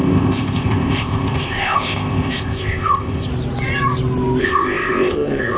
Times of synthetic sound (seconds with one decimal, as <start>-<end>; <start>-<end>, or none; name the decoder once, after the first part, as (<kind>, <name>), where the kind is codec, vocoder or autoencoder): 0.0-3.3 (codec, ZipCodec); 4.4-5.6

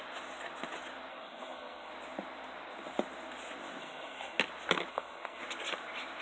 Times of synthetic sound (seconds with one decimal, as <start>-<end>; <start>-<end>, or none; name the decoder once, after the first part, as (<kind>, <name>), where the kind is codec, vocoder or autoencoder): 1.1-1.9 (codec, SNAC); 3.8-4.4; 4.9-5.4